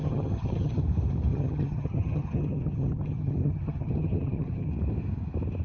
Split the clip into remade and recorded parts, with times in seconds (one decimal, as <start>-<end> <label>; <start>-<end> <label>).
0.0-0.8 remade; 0.8-1.3 recorded; 1.3-4.7 remade; 4.7-5.6 recorded

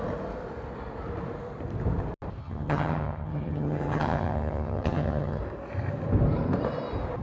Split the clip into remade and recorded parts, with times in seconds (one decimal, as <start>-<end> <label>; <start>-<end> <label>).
0.0-2.4 recorded; 2.4-5.4 remade; 5.4-7.2 recorded

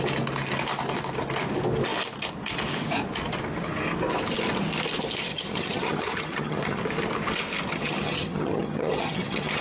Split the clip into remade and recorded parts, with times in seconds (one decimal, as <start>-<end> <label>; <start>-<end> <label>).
0.0-5.3 recorded; 5.3-6.8 remade; 6.8-7.7 recorded; 7.7-9.6 remade

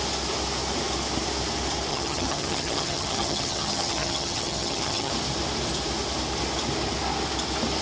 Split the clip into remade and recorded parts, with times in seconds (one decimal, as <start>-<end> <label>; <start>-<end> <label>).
0.0-1.9 recorded; 1.9-5.1 remade; 5.1-7.8 recorded

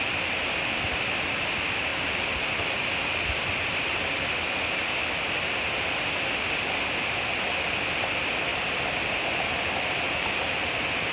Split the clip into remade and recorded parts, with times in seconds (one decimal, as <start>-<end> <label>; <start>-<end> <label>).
0.0-11.1 recorded

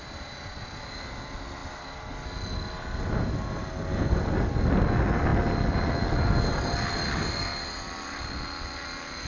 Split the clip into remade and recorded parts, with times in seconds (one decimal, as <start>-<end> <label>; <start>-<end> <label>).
0.0-9.3 recorded

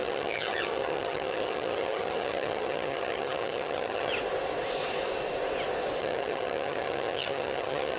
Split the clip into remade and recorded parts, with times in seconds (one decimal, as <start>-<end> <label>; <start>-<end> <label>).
0.0-4.1 remade; 4.1-6.0 recorded; 6.0-8.0 remade